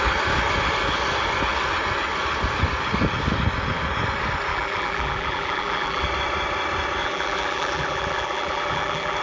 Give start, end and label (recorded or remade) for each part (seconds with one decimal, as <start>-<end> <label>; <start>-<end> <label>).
0.0-4.5 recorded; 4.5-6.1 remade; 6.1-7.0 recorded; 7.0-9.2 remade